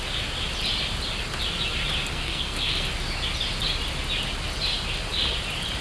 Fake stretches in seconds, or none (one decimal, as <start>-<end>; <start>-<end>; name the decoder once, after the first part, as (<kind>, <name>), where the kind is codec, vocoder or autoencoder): 2.1-2.9 (codec, SNAC)